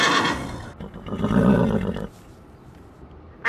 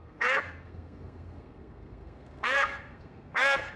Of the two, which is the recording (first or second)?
first